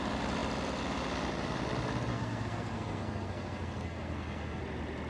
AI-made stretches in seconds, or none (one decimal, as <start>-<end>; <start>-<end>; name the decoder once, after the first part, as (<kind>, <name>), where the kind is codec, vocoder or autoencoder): 2.1-4.6 (codec, SNAC)